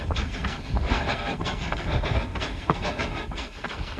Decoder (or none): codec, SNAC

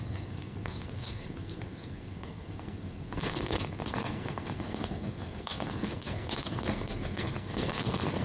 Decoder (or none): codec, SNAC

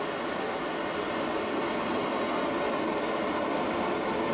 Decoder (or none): none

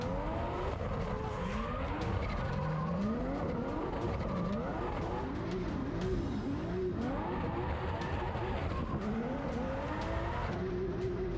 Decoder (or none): none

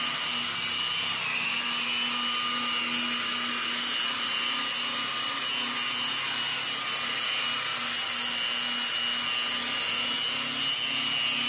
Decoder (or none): none